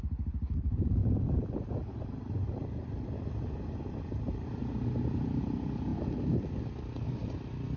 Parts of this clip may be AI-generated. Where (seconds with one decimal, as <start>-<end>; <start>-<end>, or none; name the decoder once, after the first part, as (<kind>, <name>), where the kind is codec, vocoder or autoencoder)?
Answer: 0.0-1.0 (vocoder, BigVGAN v2); 4.6-5.9